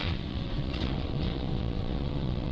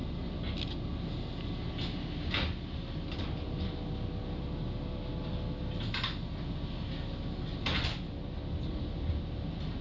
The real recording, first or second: second